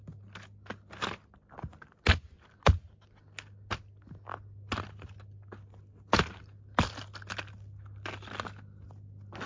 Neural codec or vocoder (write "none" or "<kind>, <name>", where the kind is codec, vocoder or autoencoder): none